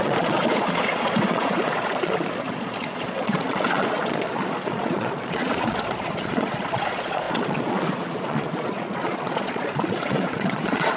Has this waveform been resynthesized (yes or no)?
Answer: yes